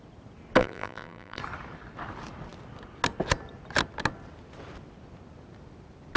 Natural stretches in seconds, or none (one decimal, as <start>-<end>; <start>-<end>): 0.0-0.6; 1.4-6.2